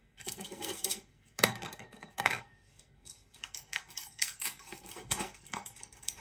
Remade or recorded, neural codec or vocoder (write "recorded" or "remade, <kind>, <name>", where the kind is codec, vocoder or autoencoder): remade, codec, SNAC